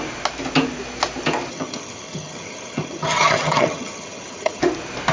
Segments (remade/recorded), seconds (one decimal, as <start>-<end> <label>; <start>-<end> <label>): 0.0-1.5 recorded; 1.5-4.6 remade; 4.6-5.1 recorded

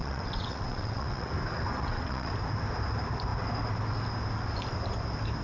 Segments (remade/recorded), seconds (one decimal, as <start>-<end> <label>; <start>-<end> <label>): 0.0-1.3 remade; 1.3-1.8 recorded; 1.8-2.3 remade; 2.3-5.4 recorded